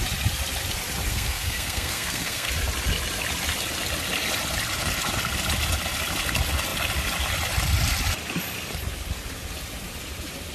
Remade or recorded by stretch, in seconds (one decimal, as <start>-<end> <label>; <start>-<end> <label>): 0.0-1.1 recorded; 1.1-2.5 remade; 2.5-10.5 recorded